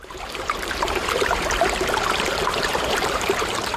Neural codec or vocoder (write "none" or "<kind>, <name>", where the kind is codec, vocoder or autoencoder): vocoder, BigVGAN v2